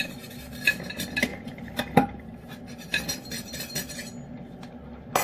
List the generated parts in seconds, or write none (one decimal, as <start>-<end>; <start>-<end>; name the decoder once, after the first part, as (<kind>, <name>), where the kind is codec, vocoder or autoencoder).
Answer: 1.3-4.0 (vocoder, BigVGAN v2)